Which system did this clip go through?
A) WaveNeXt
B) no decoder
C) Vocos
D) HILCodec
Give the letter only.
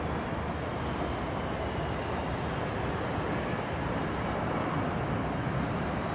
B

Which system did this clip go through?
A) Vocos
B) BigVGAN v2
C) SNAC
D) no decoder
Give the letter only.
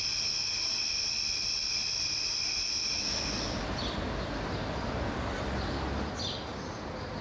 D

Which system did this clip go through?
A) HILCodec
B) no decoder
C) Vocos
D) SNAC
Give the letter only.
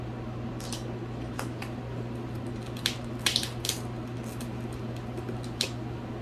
B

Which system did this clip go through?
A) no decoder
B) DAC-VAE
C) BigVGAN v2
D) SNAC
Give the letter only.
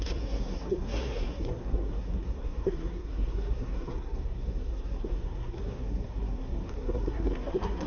D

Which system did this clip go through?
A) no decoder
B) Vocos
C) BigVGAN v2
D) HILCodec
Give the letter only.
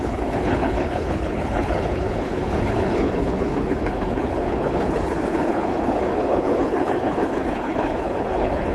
D